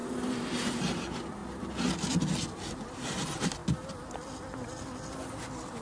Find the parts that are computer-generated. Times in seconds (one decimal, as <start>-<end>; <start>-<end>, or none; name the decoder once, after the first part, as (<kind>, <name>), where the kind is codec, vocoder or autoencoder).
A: 0.5-1.4 (vocoder, BigVGAN v2); 2.7-3.6